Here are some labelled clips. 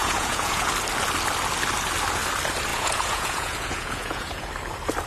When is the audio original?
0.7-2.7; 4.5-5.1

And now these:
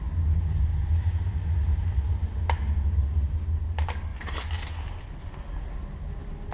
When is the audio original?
0.0-6.5

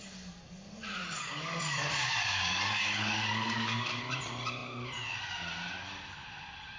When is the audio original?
0.0-1.0; 4.0-6.8

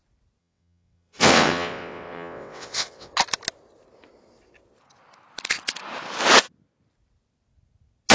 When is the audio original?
0.0-0.4; 3.1-8.1

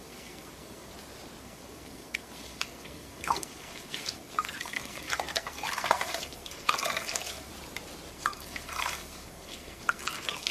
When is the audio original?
0.9-1.4; 7.5-8.1

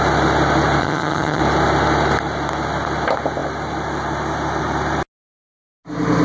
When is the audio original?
0.0-0.8; 1.4-6.2